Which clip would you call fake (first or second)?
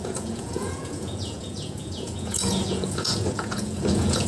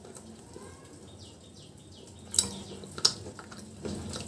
first